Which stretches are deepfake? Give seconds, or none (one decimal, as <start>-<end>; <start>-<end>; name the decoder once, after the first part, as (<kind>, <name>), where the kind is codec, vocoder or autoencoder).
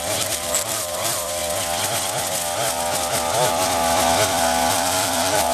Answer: 0.0-1.4 (vocoder, BigVGAN v2); 4.7-5.5